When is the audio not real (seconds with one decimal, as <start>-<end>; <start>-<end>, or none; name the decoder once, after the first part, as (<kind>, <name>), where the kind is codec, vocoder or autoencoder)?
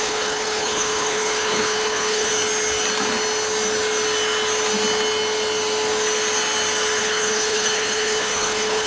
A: 0.0-2.3 (codec, HILCodec); 7.0-8.9